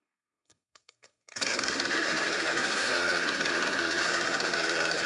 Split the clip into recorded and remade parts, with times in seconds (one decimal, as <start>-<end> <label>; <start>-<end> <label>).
0.0-5.1 remade